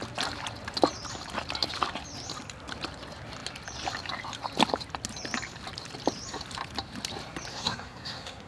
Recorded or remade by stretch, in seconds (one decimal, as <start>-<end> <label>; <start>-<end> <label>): 0.0-7.5 recorded; 7.5-8.5 remade